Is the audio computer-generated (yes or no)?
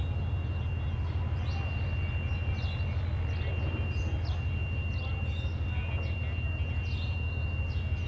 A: no